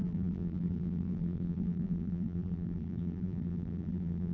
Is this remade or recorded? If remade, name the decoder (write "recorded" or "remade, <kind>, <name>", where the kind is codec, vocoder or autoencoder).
remade, vocoder, BigVGAN v2